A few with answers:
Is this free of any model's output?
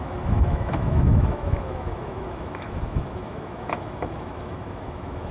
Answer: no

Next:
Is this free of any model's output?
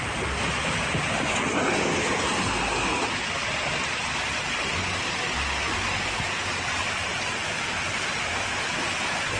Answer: yes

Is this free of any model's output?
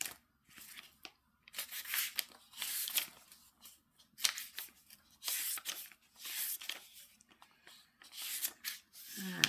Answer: yes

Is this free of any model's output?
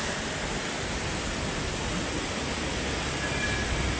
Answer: yes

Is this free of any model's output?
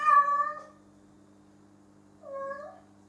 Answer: yes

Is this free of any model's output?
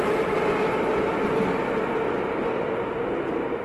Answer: yes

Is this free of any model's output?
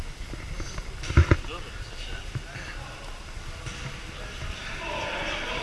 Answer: yes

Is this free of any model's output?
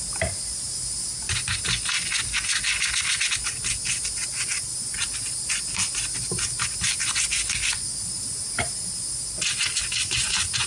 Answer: yes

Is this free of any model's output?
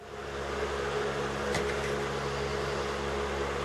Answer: yes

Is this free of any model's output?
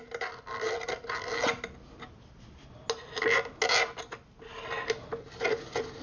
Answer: yes